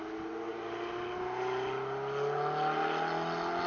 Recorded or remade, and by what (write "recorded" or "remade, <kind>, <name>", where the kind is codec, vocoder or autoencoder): recorded